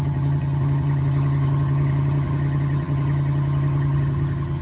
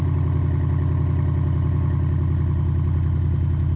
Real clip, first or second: second